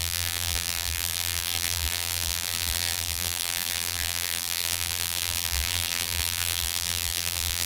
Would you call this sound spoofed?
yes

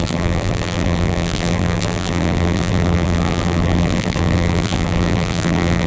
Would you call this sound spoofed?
yes